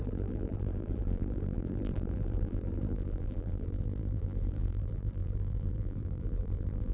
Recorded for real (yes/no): no